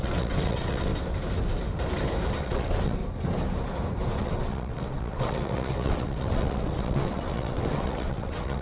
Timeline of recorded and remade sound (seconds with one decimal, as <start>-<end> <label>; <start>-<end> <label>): 0.0-0.9 remade; 0.9-2.4 recorded; 2.4-3.0 remade; 3.0-4.2 recorded; 4.2-8.6 remade